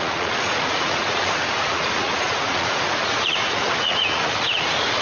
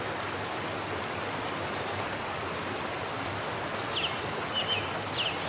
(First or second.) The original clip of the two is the second